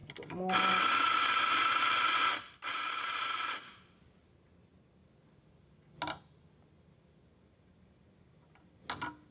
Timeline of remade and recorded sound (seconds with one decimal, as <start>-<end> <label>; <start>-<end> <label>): 0.0-9.3 recorded